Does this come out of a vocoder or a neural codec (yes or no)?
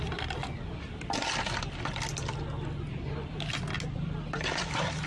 no